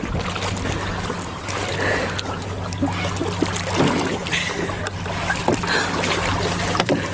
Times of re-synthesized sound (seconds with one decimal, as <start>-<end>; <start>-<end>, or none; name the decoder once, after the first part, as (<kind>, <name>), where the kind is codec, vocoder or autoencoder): none